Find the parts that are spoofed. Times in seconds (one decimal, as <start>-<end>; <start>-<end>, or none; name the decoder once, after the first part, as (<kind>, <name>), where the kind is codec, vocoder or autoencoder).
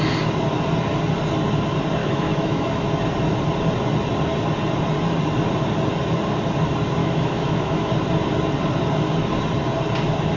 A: 2.0-2.8 (autoencoder, DAC-VAE); 7.0-7.9